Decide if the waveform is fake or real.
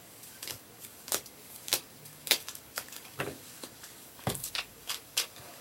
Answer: fake